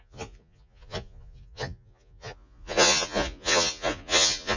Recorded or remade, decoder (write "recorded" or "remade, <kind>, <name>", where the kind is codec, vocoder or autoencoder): remade, vocoder, Vocos